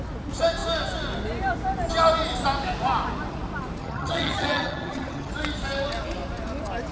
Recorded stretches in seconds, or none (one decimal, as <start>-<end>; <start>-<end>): 0.0-3.8; 5.3-6.9